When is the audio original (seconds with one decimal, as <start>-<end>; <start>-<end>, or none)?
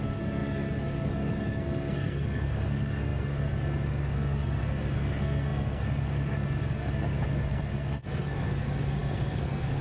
none